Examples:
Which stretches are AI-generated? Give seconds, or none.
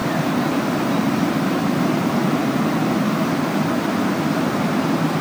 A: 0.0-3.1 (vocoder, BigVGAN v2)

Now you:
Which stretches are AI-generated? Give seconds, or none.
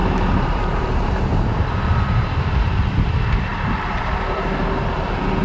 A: 0.0-5.4 (vocoder, BigVGAN v2)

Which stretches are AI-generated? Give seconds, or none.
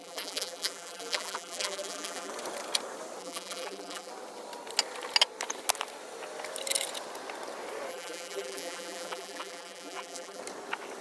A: 0.0-2.3 (vocoder, BigVGAN v2); 3.2-4.1; 7.9-10.4